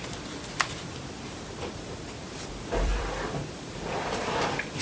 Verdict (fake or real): fake